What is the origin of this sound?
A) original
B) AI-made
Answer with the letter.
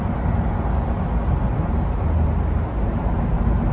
A